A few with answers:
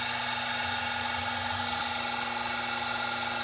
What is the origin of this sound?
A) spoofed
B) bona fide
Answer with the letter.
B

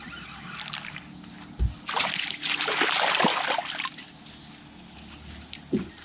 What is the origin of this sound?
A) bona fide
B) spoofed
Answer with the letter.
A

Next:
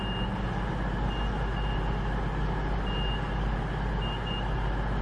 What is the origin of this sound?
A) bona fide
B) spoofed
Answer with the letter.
A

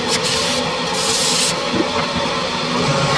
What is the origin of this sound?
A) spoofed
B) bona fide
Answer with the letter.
B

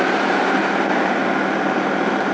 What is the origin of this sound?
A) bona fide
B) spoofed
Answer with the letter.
B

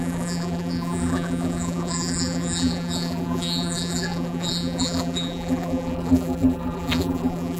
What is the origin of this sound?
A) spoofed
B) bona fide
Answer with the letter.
A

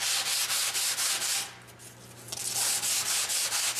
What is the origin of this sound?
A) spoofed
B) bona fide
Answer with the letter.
B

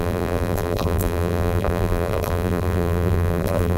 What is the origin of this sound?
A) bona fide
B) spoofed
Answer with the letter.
B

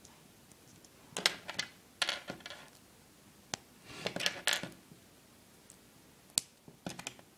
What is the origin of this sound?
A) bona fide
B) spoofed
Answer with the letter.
A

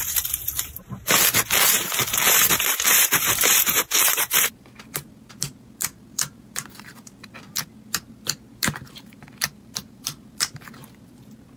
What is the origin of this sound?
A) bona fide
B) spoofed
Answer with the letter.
B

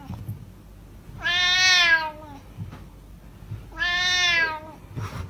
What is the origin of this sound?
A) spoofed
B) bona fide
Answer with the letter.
B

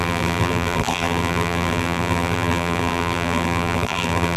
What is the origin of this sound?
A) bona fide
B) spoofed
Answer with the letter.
B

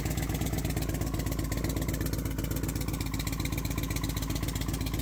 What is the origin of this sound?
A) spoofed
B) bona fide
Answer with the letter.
B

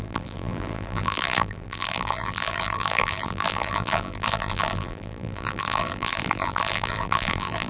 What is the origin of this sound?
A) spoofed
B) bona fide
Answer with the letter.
A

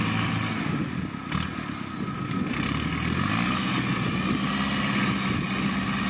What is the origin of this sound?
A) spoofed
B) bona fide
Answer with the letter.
B